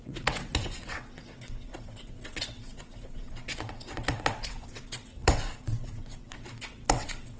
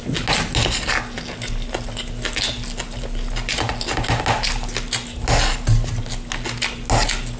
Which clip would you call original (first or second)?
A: second